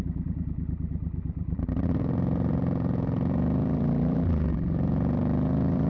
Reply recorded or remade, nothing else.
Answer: remade